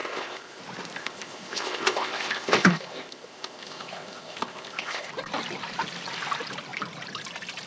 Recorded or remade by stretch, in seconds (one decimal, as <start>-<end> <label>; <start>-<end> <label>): 0.0-0.6 remade; 0.6-1.0 recorded; 1.0-5.1 remade; 5.1-7.7 recorded